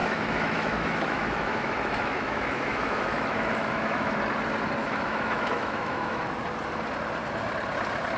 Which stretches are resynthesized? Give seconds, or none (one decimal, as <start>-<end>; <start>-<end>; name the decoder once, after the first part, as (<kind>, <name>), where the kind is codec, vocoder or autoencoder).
0.0-4.2 (autoencoder, DAC-VAE); 4.8-6.3